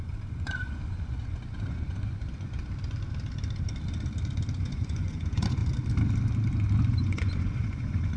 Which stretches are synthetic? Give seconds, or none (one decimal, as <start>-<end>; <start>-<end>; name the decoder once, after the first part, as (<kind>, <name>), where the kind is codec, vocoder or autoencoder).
0.0-2.2 (vocoder, Vocos); 4.6-5.6; 6.9-8.2